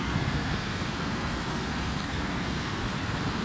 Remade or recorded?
remade